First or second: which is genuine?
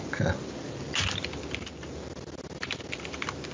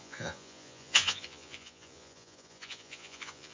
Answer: first